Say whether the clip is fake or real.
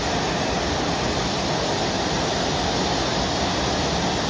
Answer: real